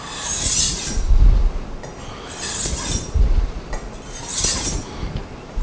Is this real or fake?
real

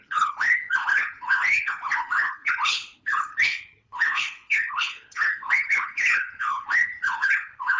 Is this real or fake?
fake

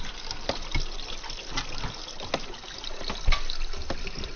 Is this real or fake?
real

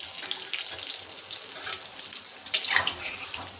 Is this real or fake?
fake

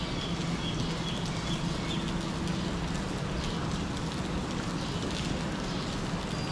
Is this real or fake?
real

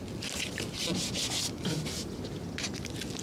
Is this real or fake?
real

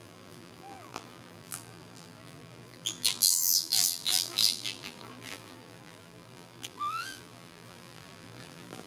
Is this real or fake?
fake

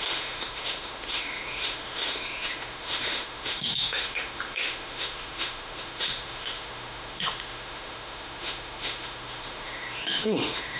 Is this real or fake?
fake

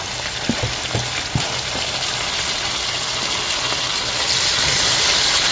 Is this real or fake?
real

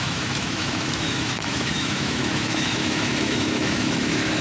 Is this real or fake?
fake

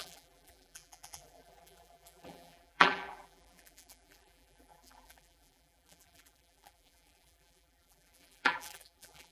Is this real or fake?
fake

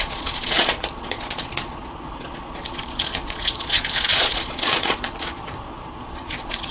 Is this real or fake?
fake